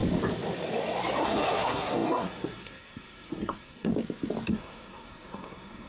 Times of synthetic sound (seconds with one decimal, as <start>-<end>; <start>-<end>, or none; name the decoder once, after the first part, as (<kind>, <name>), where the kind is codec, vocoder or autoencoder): 1.2-3.9 (codec, SNAC); 4.5-5.9